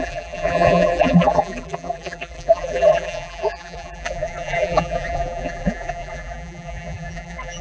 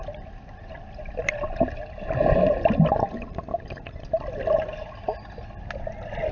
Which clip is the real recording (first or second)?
second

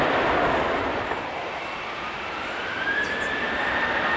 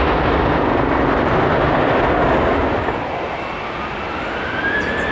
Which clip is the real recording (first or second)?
second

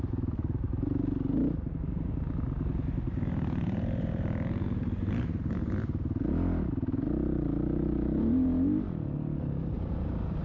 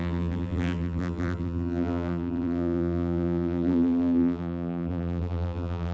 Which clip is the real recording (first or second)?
first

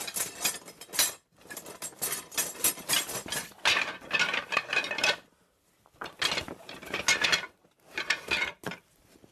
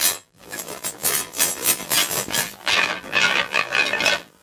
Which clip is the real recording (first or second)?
first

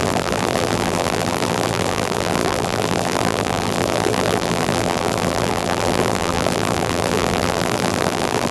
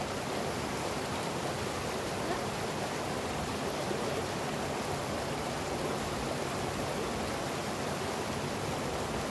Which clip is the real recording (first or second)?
second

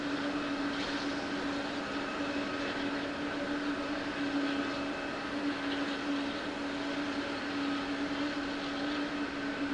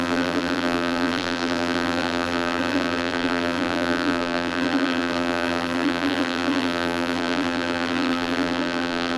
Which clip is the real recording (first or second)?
first